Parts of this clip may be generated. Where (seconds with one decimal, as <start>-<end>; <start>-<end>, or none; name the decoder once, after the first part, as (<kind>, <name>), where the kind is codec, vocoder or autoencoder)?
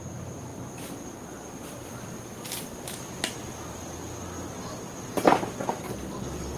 none